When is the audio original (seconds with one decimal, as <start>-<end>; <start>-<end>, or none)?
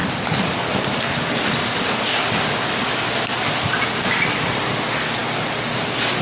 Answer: 0.0-6.2